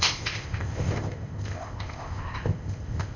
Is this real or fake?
fake